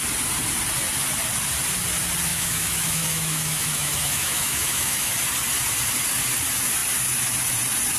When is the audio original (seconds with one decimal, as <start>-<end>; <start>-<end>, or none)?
0.0-2.3; 5.1-8.0